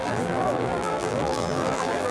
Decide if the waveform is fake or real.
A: fake